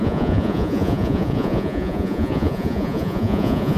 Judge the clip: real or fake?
fake